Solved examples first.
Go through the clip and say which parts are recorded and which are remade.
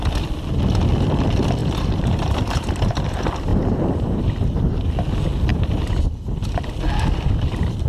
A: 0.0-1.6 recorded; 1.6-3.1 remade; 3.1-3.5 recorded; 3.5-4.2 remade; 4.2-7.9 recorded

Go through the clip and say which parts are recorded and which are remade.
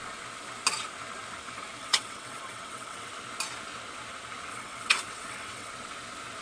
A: 0.0-1.8 recorded; 1.8-3.1 remade; 3.1-4.5 recorded; 4.5-5.7 remade; 5.7-6.4 recorded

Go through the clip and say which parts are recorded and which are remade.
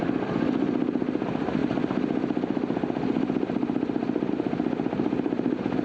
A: 0.0-5.8 recorded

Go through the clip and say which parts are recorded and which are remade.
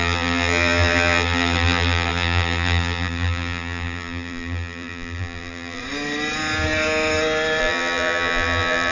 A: 0.0-5.8 remade; 5.8-7.6 recorded; 7.6-8.9 remade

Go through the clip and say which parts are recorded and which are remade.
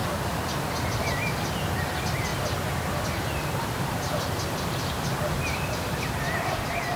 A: 0.0-2.3 remade; 2.3-4.7 recorded; 4.7-7.0 remade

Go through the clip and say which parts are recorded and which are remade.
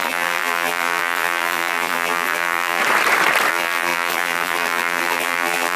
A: 0.0-2.8 remade; 2.8-3.5 recorded; 3.5-5.8 remade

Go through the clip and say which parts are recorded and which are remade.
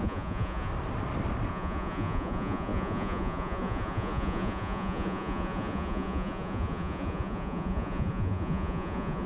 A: 0.0-0.7 remade; 0.7-1.5 recorded; 1.5-9.3 remade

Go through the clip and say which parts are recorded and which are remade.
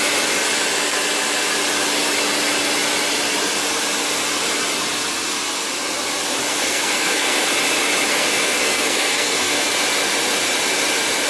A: 0.0-6.5 recorded; 6.5-7.5 remade; 7.5-8.1 recorded; 8.1-9.7 remade; 9.7-11.3 recorded